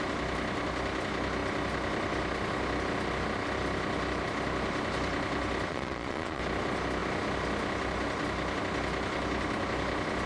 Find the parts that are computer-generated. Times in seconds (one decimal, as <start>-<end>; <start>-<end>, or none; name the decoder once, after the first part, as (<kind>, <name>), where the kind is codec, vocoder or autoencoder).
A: 5.7-6.4 (vocoder, Vocos)